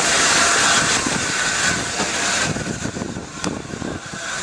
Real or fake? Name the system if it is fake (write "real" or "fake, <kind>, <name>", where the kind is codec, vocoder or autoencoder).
real